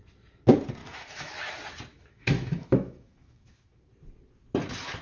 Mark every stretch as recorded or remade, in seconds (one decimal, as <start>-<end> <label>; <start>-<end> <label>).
0.0-0.8 recorded; 0.8-1.3 remade; 1.3-1.9 recorded; 1.9-3.9 remade; 3.9-5.0 recorded